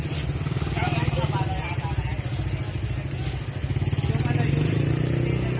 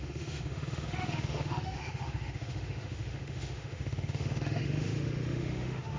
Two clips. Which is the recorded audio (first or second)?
first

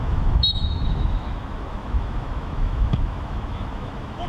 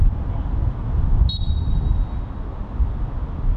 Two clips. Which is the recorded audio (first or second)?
second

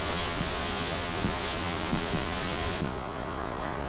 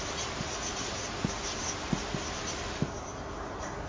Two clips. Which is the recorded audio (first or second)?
second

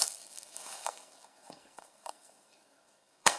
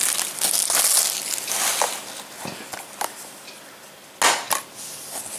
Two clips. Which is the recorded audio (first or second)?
second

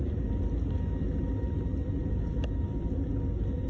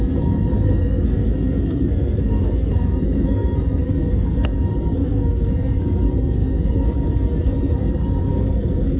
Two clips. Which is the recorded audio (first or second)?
first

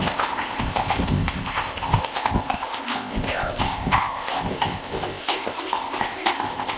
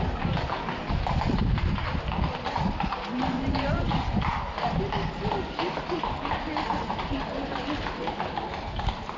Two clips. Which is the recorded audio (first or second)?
second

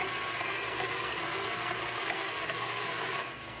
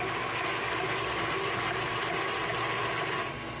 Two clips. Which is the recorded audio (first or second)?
second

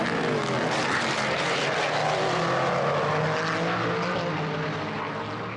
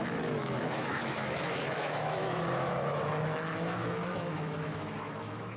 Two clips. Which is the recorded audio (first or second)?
first